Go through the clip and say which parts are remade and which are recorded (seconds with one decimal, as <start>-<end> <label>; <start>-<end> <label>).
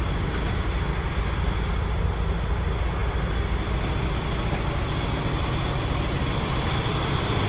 0.0-7.5 recorded